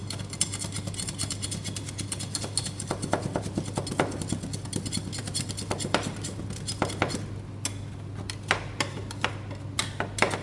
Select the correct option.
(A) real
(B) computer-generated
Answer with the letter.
A